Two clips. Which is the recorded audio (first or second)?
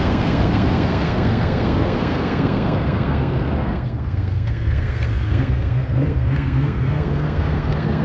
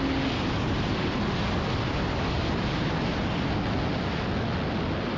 second